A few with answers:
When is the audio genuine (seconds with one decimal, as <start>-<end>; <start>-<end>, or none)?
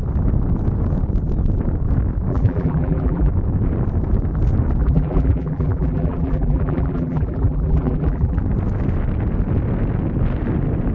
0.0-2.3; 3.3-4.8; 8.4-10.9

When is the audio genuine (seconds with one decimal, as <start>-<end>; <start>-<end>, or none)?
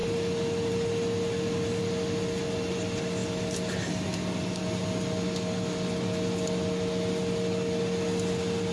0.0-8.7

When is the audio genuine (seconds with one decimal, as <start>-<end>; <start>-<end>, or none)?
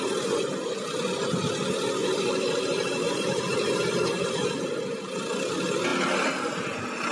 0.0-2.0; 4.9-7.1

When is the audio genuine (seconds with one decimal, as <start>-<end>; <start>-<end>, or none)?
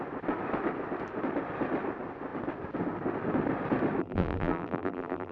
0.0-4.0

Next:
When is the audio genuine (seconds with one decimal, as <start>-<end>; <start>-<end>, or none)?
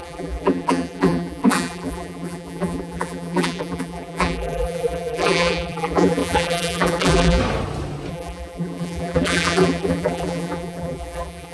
7.4-8.1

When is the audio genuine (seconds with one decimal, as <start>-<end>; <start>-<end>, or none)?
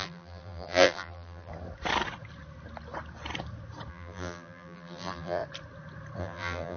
1.5-3.9; 5.4-6.2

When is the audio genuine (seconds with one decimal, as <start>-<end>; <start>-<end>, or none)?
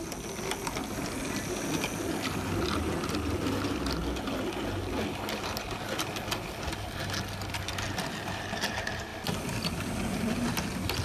0.0-11.0